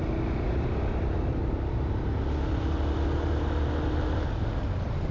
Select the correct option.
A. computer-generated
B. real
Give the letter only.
B